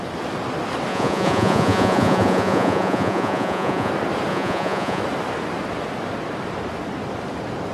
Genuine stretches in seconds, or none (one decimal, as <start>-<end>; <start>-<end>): 0.0-0.9; 3.9-4.3; 5.0-7.7